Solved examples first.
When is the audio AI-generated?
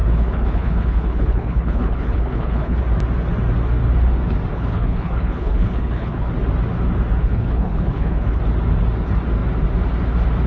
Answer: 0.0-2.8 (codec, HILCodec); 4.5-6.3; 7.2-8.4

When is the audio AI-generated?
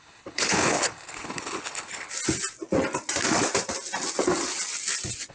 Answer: 0.0-2.1 (codec, HILCodec)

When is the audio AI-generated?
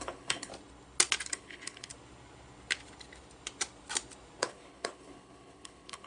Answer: 0.0-0.5 (codec, HILCodec); 1.3-1.9; 4.4-6.1